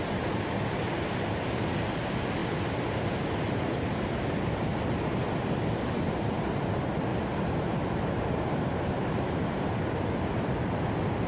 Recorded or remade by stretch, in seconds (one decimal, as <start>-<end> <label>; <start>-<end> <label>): 0.0-0.8 remade; 0.8-7.1 recorded; 7.1-9.7 remade; 9.7-11.3 recorded